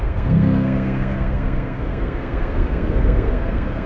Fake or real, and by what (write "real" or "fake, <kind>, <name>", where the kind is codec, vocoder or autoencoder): fake, codec, SNAC